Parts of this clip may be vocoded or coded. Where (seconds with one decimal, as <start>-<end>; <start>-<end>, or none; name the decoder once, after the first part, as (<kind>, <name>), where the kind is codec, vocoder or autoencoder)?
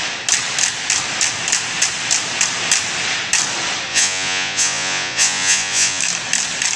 3.9-6.0 (vocoder, Vocos)